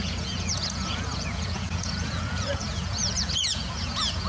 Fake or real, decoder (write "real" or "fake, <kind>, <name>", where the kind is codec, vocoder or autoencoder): fake, vocoder, Vocos